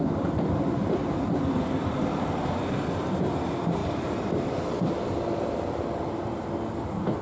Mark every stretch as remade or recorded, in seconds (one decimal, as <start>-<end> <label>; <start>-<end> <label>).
0.0-3.8 recorded; 3.8-4.9 remade; 4.9-7.2 recorded